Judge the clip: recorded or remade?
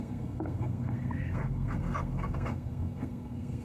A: remade